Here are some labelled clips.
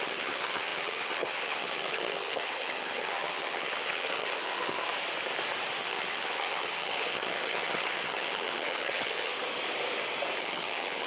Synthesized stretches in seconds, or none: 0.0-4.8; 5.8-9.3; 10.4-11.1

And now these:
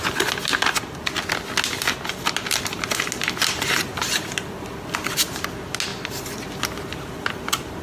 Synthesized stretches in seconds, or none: none

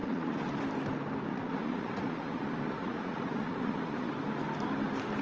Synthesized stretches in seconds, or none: 0.0-0.6; 1.3-4.1

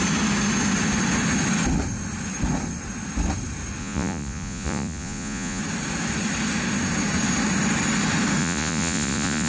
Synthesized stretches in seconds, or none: 3.8-5.6; 8.4-9.5

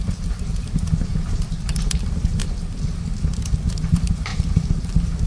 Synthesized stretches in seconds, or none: 0.0-2.4; 3.7-5.3

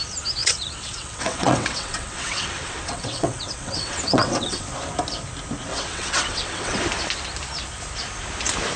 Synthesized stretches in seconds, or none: 0.4-4.6; 5.7-6.8

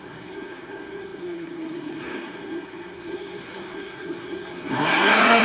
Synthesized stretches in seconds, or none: 0.0-5.4